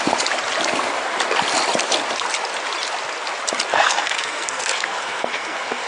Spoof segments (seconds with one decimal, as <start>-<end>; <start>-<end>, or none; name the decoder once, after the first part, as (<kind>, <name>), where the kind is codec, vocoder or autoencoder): 3.7-5.9 (codec, SNAC)